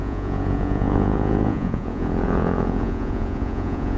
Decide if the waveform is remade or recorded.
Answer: remade